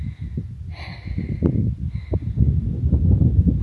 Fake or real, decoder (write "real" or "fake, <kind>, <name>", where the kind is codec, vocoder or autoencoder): real